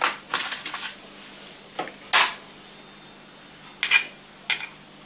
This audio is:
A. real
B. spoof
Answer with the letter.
A